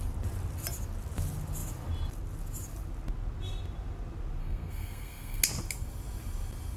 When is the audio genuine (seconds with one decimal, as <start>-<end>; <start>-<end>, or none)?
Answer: 0.0-4.4; 5.4-6.8